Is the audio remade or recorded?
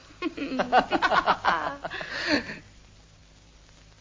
recorded